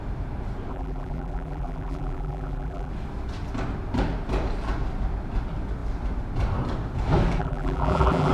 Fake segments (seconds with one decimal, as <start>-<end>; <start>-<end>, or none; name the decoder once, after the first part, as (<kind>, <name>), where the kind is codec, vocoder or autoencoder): 0.7-2.9 (vocoder, BigVGAN v2); 7.4-8.3